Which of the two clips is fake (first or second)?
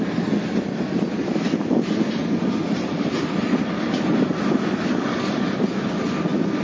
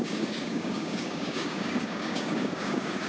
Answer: second